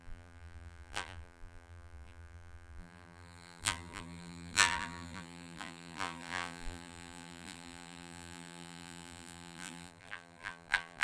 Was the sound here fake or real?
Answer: fake